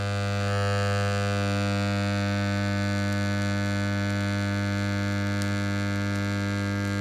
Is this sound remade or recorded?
recorded